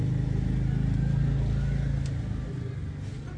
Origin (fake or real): real